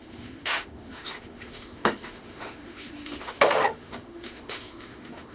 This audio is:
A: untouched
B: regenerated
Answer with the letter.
B